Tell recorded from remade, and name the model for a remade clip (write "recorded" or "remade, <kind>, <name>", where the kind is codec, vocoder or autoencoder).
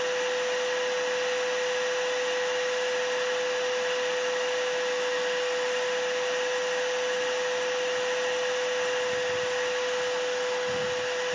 recorded